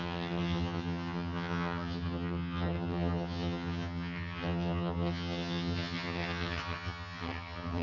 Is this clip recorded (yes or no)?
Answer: no